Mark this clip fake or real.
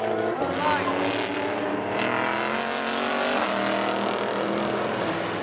real